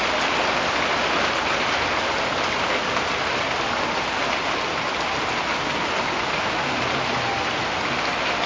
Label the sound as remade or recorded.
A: recorded